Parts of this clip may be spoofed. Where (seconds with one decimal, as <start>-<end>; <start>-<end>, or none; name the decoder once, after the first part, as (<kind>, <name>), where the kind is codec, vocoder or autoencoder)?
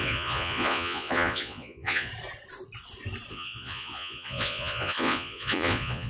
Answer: 0.0-2.1 (vocoder, Vocos); 3.3-6.1